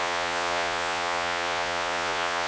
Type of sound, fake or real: fake